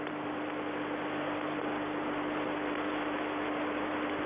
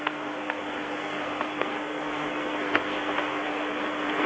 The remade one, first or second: second